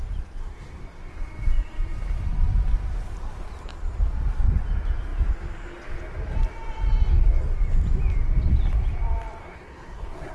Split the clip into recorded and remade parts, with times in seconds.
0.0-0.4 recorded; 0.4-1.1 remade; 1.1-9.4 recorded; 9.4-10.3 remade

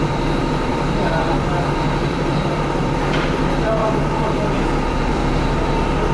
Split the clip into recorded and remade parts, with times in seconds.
0.0-5.2 remade; 5.2-6.1 recorded